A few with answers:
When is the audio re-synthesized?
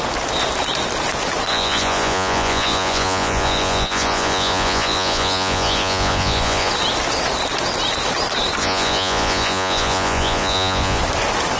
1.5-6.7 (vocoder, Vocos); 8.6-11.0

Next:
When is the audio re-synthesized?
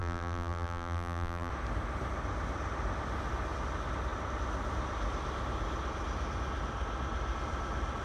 0.0-1.5 (vocoder, BigVGAN v2)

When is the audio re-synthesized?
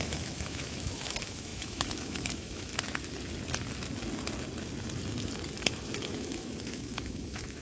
0.0-2.7 (autoencoder, DAC-VAE); 6.0-7.6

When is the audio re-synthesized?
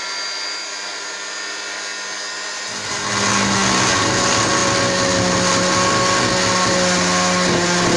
none